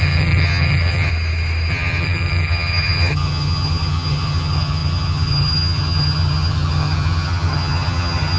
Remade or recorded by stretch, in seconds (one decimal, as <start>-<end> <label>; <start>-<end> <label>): 0.0-1.1 remade; 1.1-1.7 recorded; 1.7-8.4 remade